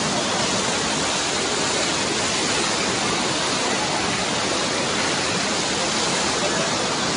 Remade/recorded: recorded